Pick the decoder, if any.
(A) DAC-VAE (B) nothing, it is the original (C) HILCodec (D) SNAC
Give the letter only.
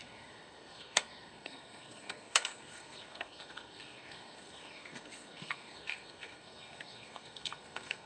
D